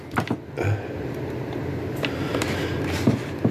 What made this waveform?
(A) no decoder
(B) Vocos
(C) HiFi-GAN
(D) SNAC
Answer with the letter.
A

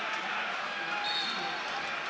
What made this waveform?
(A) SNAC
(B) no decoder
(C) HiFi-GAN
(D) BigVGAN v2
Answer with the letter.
B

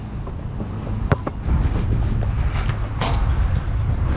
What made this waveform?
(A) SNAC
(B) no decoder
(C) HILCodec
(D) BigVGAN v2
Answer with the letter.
B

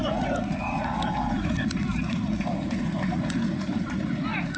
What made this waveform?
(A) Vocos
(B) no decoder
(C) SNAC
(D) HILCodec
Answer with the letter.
A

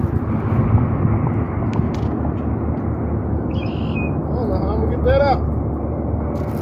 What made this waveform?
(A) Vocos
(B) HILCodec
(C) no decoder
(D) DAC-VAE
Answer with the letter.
C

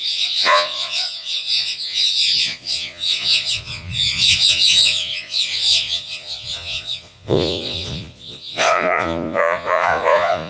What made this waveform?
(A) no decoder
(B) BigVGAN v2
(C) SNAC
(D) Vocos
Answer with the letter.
D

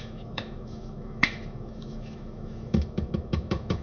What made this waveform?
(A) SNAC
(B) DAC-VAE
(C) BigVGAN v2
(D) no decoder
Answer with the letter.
B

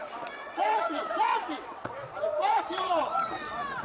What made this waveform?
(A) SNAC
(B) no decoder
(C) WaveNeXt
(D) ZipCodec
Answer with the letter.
C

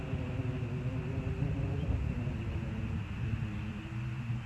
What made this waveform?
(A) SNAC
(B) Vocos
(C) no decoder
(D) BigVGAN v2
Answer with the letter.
C